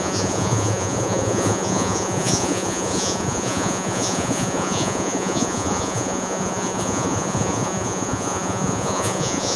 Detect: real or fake fake